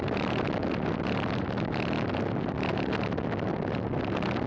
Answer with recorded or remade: recorded